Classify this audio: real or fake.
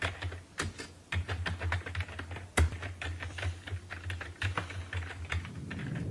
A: real